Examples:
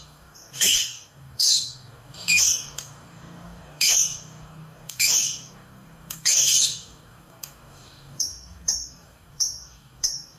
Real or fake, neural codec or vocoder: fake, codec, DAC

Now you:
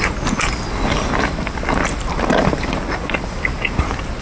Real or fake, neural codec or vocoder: real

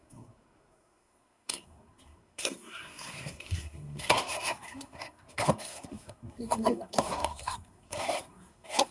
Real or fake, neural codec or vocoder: fake, codec, SNAC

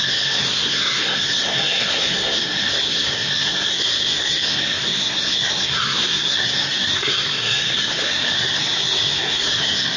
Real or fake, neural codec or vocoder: fake, codec, SNAC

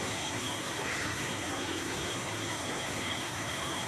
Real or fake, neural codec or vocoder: fake, codec, SNAC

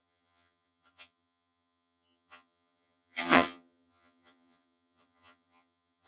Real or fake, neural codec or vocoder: fake, vocoder, HiFi-GAN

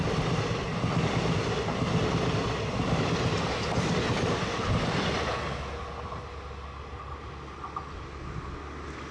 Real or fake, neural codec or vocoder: real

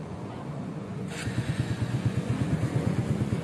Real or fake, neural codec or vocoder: fake, vocoder, Vocos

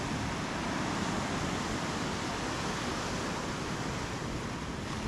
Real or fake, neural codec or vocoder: real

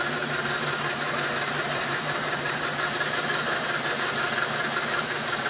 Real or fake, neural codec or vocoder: fake, vocoder, BigVGAN v2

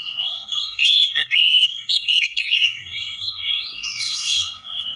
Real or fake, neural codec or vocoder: fake, codec, SNAC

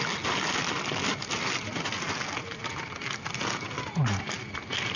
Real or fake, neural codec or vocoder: real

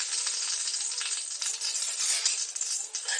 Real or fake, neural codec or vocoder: real